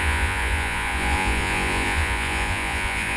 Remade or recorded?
remade